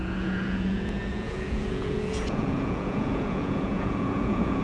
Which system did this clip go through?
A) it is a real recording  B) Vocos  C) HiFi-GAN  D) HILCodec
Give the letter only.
B